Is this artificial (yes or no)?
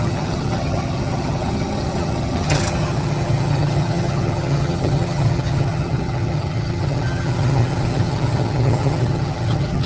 yes